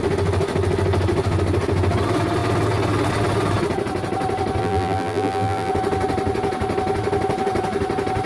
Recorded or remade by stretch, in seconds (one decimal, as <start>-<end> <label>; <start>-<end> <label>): 0.0-4.6 recorded; 4.6-5.7 remade; 5.7-8.3 recorded